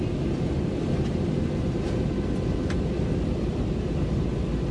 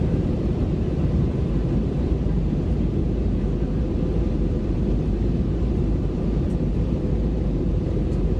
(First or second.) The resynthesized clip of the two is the second